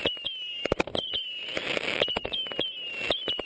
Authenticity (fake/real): real